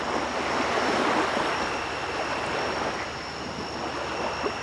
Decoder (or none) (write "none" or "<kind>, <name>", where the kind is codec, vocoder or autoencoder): none